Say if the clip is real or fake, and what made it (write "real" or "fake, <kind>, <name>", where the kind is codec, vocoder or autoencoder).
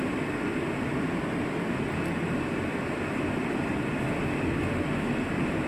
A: real